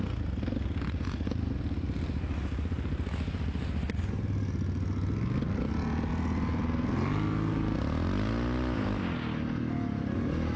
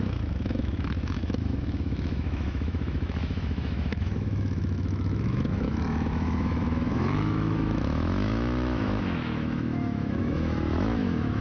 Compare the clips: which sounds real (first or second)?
first